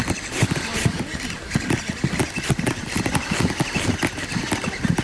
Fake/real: real